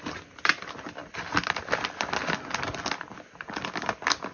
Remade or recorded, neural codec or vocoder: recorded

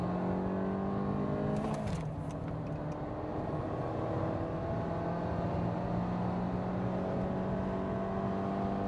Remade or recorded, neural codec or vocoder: recorded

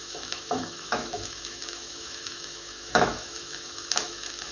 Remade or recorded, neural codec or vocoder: remade, autoencoder, DAC-VAE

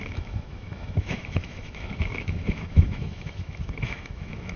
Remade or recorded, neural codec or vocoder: remade, autoencoder, DAC-VAE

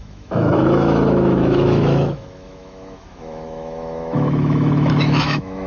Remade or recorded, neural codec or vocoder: remade, autoencoder, DAC-VAE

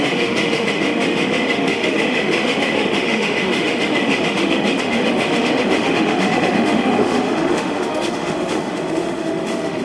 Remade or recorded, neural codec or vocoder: remade, autoencoder, DAC-VAE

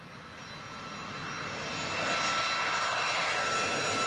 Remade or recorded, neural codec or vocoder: recorded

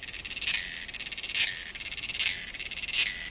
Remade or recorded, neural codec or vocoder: recorded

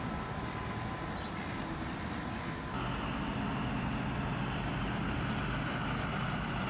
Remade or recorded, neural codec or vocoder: recorded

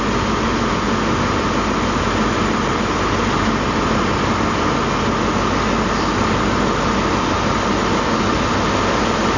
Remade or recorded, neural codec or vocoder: recorded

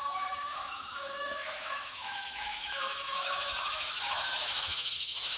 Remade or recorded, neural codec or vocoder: remade, autoencoder, DAC-VAE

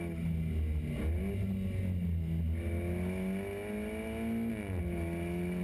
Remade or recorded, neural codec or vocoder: recorded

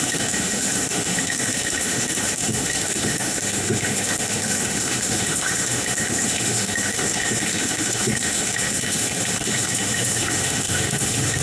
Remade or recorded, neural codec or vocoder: remade, autoencoder, DAC-VAE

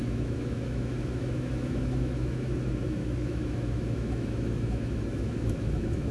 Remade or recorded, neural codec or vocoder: remade, autoencoder, DAC-VAE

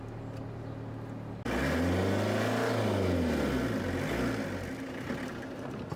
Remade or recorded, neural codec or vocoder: recorded